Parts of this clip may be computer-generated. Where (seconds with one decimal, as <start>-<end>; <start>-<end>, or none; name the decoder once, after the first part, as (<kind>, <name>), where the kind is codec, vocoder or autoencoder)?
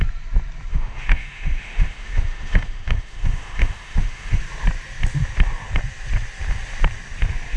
0.7-4.4 (autoencoder, DAC-VAE)